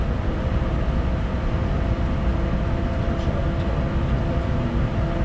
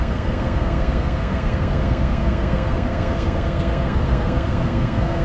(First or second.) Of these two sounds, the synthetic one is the second